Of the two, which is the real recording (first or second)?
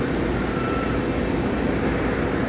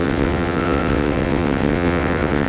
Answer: first